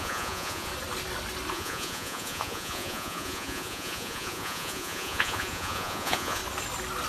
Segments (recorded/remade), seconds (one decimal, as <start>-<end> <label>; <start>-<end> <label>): 0.0-0.7 remade; 0.7-1.5 recorded; 1.5-6.4 remade; 6.4-7.1 recorded